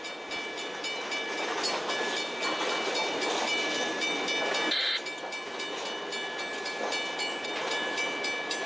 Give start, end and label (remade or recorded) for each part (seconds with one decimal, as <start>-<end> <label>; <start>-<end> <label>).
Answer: 0.0-8.7 recorded

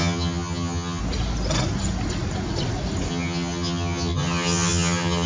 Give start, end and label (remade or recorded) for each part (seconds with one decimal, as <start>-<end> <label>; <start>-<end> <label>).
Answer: 0.0-1.0 remade; 1.0-3.1 recorded; 3.1-5.3 remade

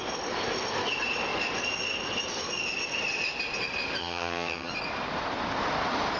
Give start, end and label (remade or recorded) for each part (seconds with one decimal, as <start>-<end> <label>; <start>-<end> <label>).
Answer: 0.0-4.0 recorded; 4.0-4.7 remade; 4.7-6.2 recorded

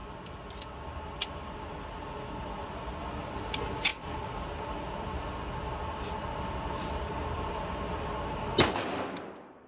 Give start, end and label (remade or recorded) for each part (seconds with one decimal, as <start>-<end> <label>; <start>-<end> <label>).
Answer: 0.0-9.7 recorded

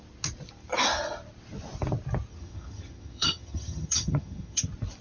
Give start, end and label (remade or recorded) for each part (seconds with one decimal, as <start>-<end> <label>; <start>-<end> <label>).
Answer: 0.0-2.3 recorded; 2.3-4.6 remade; 4.6-5.0 recorded

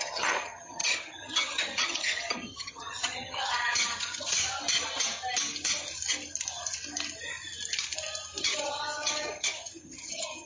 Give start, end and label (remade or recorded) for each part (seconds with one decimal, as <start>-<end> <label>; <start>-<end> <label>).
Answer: 0.0-4.4 remade; 4.4-8.4 recorded; 8.4-10.5 remade